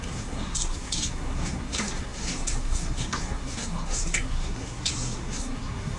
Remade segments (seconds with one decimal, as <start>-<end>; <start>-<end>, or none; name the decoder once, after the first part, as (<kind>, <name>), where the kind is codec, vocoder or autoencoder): 0.0-6.0 (codec, SNAC)